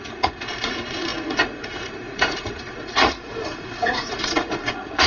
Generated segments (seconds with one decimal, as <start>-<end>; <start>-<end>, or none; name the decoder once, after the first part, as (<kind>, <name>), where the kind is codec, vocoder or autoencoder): 0.0-5.1 (vocoder, Vocos)